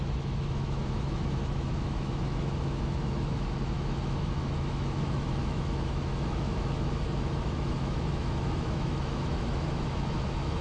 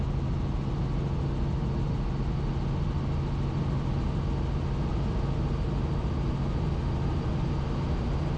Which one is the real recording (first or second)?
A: second